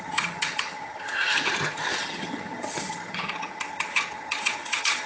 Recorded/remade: remade